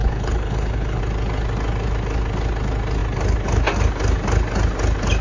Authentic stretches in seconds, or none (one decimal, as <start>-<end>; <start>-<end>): 1.0-5.2